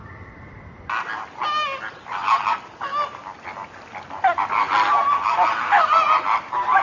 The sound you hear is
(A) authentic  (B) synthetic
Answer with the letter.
A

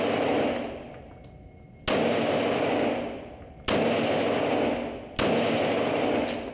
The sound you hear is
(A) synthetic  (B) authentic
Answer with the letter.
B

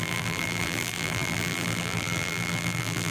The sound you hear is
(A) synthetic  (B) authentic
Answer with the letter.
A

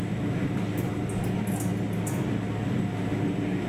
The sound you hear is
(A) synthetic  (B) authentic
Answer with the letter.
B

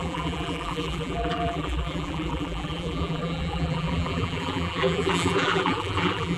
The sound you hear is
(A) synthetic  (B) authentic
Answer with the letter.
A